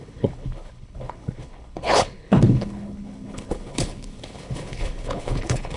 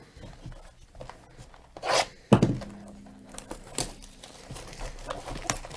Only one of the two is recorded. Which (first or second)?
second